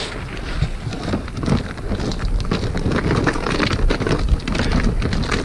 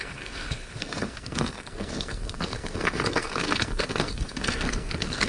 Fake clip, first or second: second